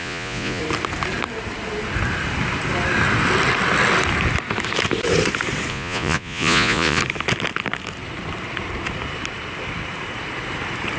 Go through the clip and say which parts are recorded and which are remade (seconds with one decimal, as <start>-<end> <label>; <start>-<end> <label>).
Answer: 0.0-0.6 remade; 0.6-5.7 recorded; 5.7-7.0 remade; 7.0-11.0 recorded